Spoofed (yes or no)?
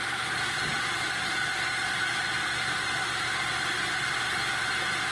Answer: no